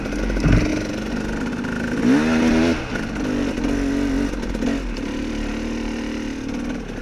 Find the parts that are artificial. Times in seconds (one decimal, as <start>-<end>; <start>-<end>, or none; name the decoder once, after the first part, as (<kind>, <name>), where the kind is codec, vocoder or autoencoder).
none